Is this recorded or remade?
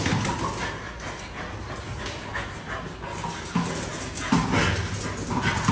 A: recorded